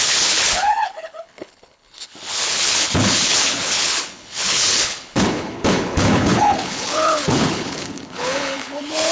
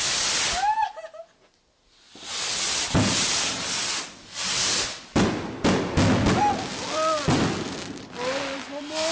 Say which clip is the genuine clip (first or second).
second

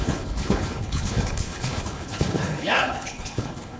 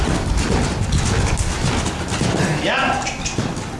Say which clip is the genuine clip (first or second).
second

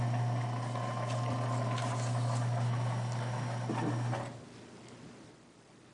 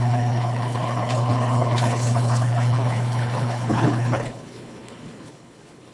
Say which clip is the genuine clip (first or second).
first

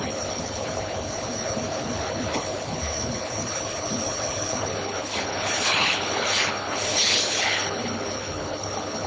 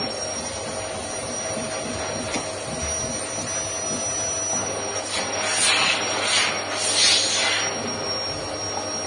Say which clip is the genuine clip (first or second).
second